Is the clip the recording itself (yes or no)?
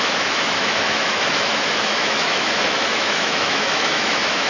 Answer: no